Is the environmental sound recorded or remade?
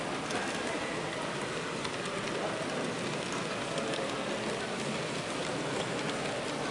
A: recorded